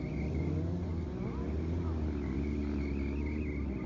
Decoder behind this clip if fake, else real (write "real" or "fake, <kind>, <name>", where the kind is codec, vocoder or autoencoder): real